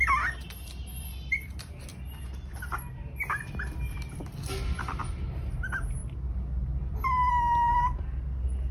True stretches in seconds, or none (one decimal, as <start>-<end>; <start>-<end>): 0.0-8.7